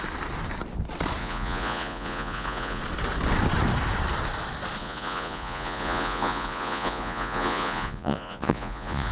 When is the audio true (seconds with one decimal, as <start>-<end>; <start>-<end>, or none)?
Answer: 0.0-1.2; 2.8-4.8

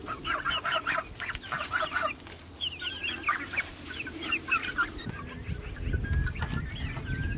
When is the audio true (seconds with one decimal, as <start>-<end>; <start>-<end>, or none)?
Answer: 0.0-3.0; 5.0-7.4

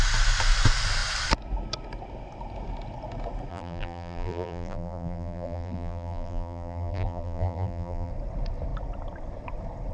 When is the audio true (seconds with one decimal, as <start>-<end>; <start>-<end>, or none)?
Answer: 0.0-3.5; 8.1-9.9

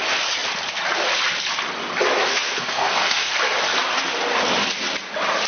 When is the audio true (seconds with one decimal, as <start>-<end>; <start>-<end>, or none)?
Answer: 0.0-2.3; 3.3-5.5

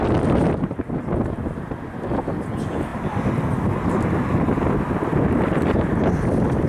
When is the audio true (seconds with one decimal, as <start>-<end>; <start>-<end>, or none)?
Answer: 1.0-6.7

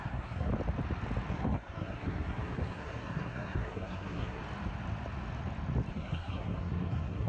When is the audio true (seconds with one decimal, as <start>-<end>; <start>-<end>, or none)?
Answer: 0.5-1.3; 4.4-5.9

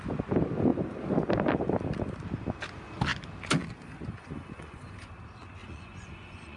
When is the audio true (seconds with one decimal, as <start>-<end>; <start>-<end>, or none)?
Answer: 0.0-4.2; 5.1-5.6